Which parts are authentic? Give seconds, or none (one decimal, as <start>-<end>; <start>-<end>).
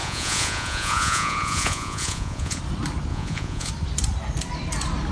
2.6-3.1; 3.7-5.1